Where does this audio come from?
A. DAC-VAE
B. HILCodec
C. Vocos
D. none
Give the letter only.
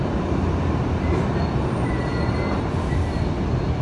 D